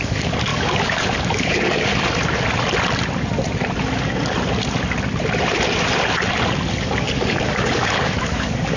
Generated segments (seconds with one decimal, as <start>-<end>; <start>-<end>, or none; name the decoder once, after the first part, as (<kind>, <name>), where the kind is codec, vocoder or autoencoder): 0.0-1.9 (codec, DAC); 6.8-8.8

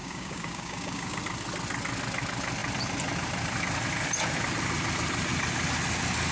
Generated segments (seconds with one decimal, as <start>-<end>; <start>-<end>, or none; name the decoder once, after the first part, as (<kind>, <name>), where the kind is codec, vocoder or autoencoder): 0.0-1.2 (codec, DAC)

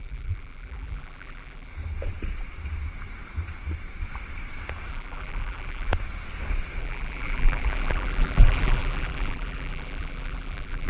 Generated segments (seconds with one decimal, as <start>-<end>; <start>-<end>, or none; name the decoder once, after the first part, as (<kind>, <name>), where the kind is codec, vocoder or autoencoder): 0.0-1.7 (vocoder, BigVGAN v2); 4.9-5.9; 6.8-10.9

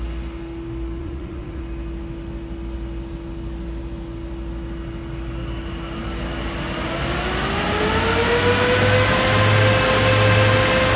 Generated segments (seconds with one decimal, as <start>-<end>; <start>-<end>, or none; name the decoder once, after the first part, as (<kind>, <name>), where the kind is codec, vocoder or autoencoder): 1.0-1.6 (vocoder, Vocos)

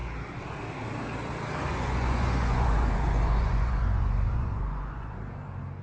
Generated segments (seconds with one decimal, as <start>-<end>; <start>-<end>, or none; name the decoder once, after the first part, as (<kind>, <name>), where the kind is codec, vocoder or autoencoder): 1.7-5.2 (vocoder, Vocos)

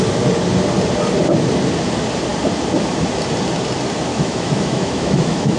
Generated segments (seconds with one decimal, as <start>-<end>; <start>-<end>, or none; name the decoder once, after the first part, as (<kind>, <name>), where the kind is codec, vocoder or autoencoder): 4.1-5.6 (autoencoder, DAC-VAE)

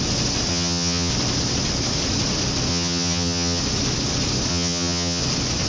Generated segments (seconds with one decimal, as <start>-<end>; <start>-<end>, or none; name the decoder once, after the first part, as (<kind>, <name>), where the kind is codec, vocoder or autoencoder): 0.5-1.1 (vocoder, HiFi-GAN); 2.7-3.6; 4.5-5.2